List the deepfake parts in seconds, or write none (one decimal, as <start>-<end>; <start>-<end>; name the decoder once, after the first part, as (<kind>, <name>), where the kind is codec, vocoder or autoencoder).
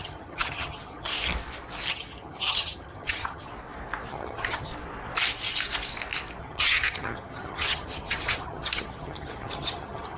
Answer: 0.0-1.1 (vocoder, HiFi-GAN); 1.9-3.5; 4.1-4.7; 6.4-10.2